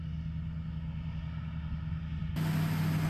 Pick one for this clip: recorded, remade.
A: recorded